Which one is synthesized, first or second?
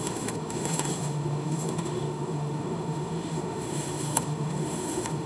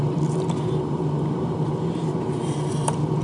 first